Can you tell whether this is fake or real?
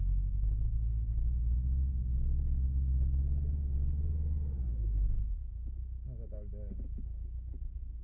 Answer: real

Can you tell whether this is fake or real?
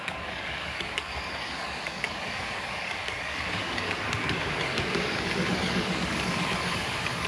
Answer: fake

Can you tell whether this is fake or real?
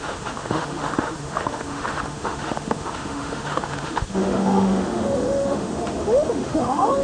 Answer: fake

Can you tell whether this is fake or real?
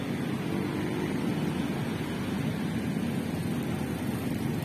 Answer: real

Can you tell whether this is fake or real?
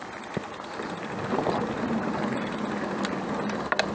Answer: real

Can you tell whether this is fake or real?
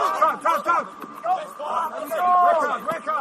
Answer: real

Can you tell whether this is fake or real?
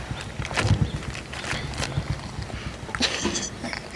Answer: real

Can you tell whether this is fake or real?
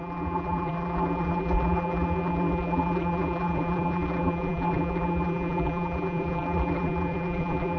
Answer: fake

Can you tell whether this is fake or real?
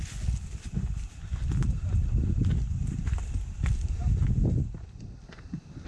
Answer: real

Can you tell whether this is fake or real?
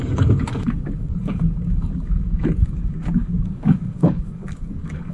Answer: fake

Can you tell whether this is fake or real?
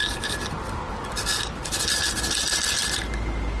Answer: real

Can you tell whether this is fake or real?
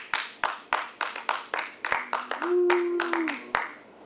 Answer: real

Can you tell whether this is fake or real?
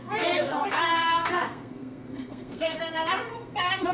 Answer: fake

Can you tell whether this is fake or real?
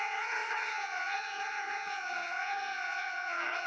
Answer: fake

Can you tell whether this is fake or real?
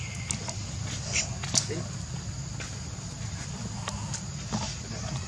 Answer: real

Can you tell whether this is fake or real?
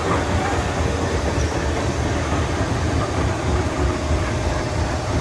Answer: real